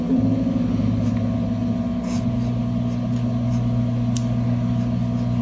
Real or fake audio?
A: real